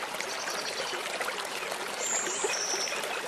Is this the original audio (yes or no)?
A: yes